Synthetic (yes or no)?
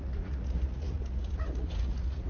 yes